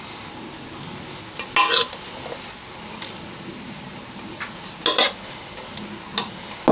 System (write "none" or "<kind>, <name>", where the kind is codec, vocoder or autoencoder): none